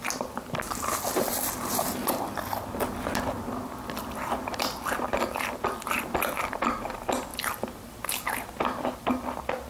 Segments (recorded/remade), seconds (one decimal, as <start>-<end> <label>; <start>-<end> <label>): 0.0-9.7 recorded